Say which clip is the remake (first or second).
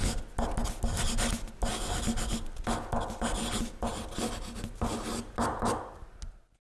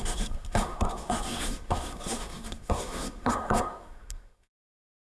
second